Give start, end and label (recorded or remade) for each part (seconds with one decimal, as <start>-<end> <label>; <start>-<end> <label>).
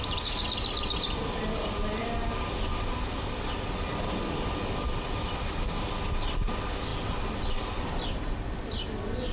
0.0-9.3 recorded